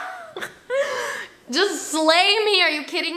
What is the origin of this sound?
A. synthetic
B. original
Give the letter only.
A